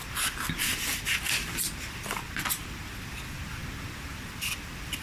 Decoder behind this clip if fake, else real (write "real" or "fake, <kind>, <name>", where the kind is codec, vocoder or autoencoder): fake, vocoder, BigVGAN v2